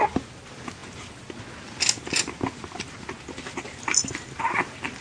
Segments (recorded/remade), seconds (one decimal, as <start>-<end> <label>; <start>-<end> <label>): 0.0-5.0 recorded